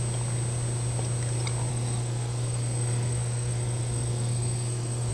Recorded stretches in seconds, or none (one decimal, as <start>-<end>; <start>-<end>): 0.0-1.7